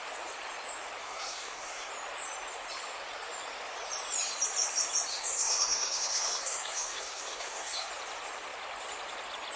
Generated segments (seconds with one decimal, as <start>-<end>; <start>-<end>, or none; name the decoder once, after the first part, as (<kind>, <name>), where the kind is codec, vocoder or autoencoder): 1.0-1.9 (codec, SNAC); 5.1-7.9